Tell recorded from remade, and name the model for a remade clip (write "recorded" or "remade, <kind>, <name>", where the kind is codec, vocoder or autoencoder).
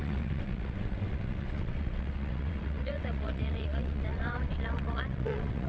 remade, vocoder, WaveNeXt